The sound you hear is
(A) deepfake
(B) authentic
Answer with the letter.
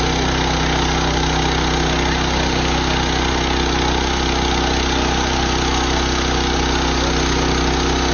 B